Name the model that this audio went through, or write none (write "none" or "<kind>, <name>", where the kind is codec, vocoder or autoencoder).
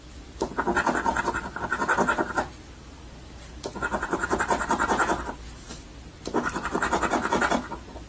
none